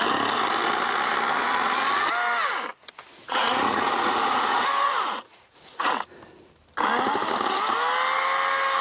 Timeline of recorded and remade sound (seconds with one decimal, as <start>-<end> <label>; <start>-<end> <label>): 0.0-2.7 recorded; 2.7-5.9 remade; 5.9-8.8 recorded